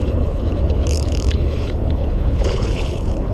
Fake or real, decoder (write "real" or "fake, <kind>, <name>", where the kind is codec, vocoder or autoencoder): fake, codec, HILCodec